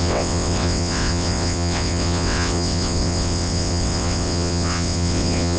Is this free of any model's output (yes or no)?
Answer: no